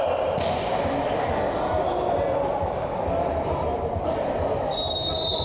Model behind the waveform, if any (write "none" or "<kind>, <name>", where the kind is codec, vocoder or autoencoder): none